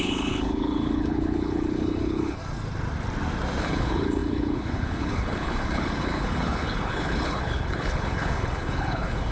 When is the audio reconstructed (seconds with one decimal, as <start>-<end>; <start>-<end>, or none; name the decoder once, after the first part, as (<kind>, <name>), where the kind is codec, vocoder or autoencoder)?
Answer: 0.0-2.4 (codec, HILCodec); 3.6-9.3